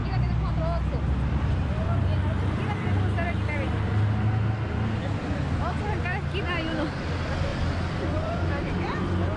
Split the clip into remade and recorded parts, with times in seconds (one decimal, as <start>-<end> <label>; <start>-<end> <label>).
0.0-0.5 remade; 0.5-9.4 recorded